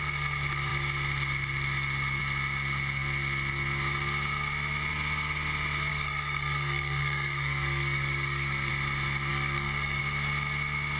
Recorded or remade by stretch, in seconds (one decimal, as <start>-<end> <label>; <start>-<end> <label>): 0.0-5.9 recorded; 5.9-8.7 remade; 8.7-9.3 recorded; 9.3-10.0 remade; 10.0-11.0 recorded